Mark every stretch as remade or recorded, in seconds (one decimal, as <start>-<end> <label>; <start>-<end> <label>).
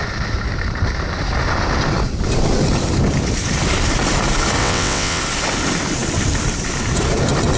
0.0-4.6 recorded; 4.6-5.2 remade; 5.2-7.6 recorded